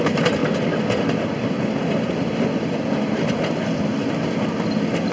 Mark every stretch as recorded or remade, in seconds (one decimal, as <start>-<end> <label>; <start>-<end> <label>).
0.0-5.1 recorded